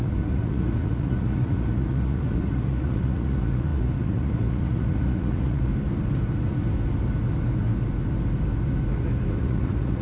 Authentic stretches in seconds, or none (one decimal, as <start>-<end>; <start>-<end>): 5.7-9.4